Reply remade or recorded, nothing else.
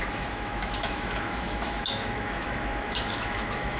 remade